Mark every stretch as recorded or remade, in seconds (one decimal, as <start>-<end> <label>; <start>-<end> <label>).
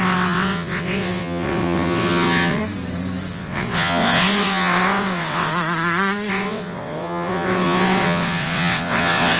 0.0-2.6 remade; 2.6-3.3 recorded; 3.3-5.5 remade; 5.5-6.3 recorded; 6.3-9.4 remade